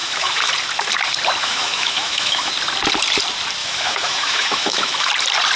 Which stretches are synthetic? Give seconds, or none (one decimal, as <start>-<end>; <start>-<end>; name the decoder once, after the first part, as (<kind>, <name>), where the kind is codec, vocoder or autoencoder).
0.0-0.5 (autoencoder, DAC-VAE); 1.4-2.5; 3.6-5.1

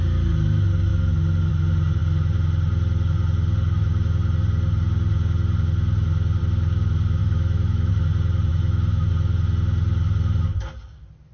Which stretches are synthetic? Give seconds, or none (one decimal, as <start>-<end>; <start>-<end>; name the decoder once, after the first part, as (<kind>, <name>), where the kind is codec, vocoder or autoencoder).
7.2-7.9 (autoencoder, DAC-VAE); 8.5-9.1